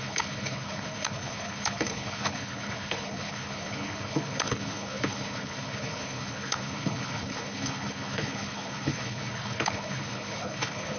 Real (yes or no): no